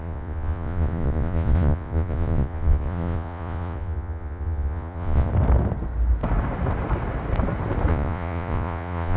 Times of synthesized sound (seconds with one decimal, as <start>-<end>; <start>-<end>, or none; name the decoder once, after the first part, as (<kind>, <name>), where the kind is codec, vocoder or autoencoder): 0.0-5.3 (vocoder, Vocos); 7.9-9.2